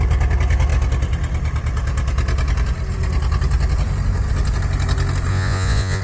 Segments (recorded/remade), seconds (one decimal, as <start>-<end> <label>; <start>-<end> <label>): 0.0-5.3 recorded; 5.3-6.0 remade